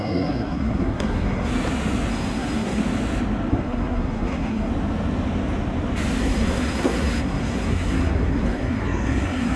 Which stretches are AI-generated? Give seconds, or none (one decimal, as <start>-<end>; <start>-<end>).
0.0-1.5; 2.1-2.8; 3.5-4.7; 6.2-9.6